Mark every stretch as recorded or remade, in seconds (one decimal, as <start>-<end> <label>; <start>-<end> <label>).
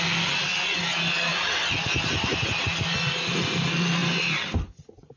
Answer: 0.0-5.2 recorded